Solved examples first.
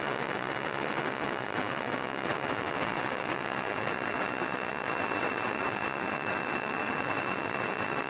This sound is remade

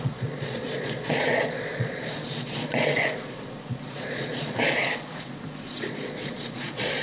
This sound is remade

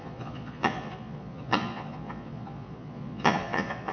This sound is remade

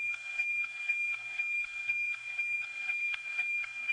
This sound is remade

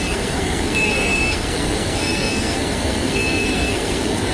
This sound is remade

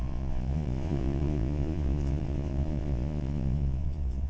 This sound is remade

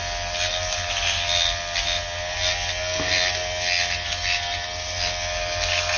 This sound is recorded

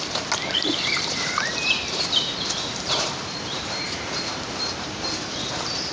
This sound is remade